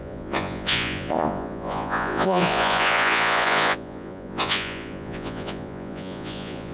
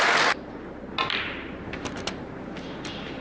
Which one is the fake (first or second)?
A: first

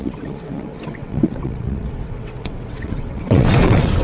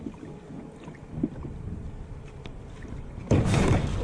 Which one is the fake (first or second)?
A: first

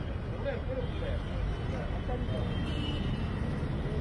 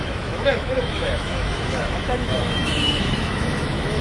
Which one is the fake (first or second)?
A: second